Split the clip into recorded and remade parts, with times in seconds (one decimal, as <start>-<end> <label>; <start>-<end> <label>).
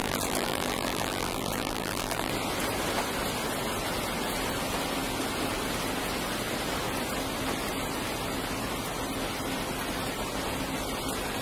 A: 0.0-2.3 remade; 2.3-11.4 recorded